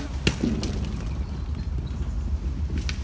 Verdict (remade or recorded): recorded